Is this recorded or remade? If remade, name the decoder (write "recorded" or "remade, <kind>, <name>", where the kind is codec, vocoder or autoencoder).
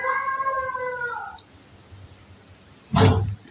recorded